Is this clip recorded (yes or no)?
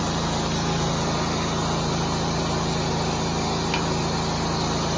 yes